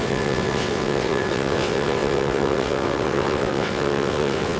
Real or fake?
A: fake